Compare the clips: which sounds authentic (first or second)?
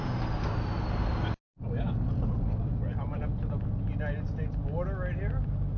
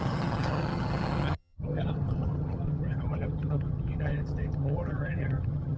first